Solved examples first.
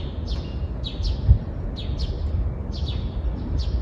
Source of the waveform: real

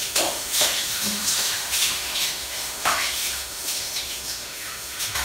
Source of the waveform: fake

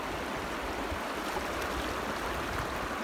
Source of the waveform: real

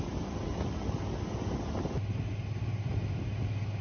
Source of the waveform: real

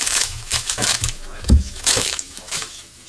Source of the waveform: fake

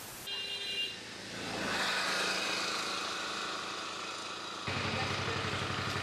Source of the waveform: real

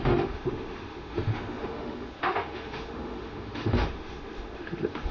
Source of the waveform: fake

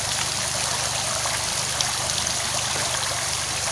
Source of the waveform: real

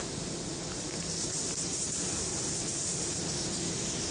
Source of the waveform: real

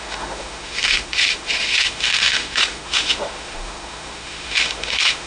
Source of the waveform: fake